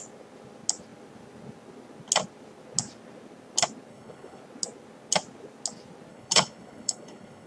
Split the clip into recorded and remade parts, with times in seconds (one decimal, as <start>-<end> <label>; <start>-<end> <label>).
0.0-3.9 recorded; 3.9-4.4 remade; 4.4-6.1 recorded; 6.1-7.5 remade